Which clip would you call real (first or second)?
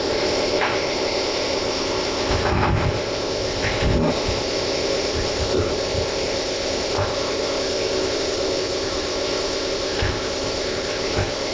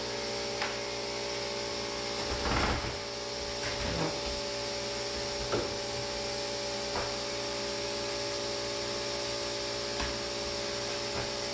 second